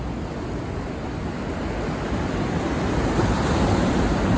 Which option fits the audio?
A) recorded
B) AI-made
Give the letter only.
A